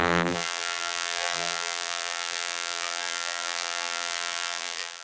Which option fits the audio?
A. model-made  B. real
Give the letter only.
A